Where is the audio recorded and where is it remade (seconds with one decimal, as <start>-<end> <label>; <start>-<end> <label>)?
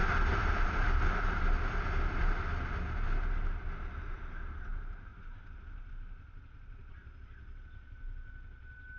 0.0-9.0 recorded